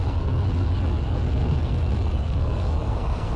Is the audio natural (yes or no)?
no